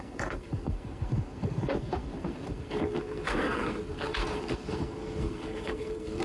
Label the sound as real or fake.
fake